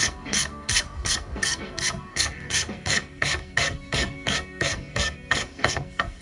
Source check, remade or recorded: remade